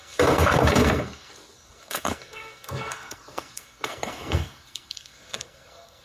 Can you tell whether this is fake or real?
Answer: fake